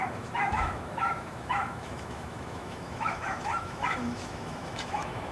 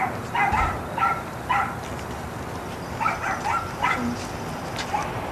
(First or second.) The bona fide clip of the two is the second